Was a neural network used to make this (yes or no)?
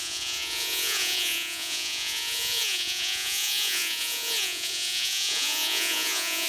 yes